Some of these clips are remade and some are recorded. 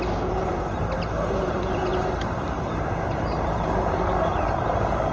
remade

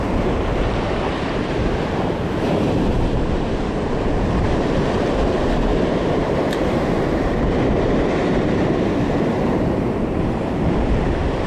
remade